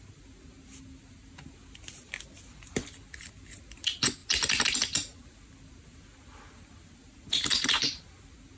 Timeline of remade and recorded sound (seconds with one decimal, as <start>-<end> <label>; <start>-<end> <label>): 0.0-8.6 recorded